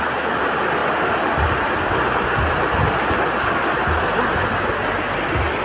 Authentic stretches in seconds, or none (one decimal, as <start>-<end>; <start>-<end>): 0.0-5.6